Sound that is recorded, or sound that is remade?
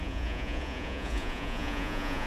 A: remade